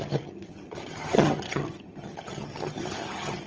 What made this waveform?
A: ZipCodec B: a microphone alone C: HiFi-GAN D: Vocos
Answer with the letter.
C